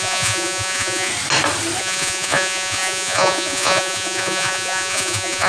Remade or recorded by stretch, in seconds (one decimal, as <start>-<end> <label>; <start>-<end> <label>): 0.0-1.1 remade; 1.1-1.8 recorded; 1.8-5.5 remade